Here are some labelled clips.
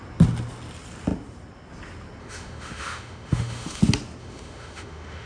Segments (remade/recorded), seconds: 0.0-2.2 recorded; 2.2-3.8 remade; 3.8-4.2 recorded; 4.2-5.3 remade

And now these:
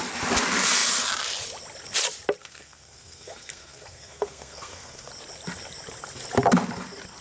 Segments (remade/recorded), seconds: 0.0-2.4 recorded; 2.4-5.1 remade; 5.1-7.2 recorded

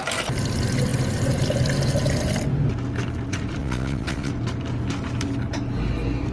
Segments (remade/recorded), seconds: 0.0-3.6 recorded; 3.6-4.3 remade; 4.3-6.3 recorded

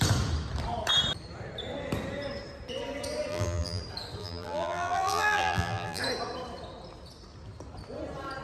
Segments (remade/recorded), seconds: 0.0-3.3 recorded; 3.3-3.8 remade; 3.8-4.2 recorded; 4.2-6.0 remade; 6.0-8.4 recorded